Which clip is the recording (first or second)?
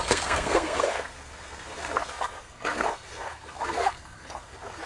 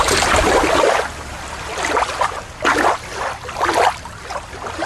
second